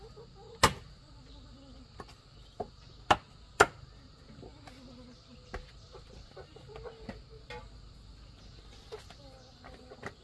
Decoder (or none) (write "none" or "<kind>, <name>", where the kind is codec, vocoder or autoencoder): none